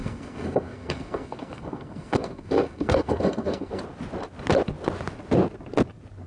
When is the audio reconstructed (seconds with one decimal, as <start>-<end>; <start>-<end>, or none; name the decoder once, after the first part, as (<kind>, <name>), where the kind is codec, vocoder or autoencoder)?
0.0-3.8 (codec, SNAC)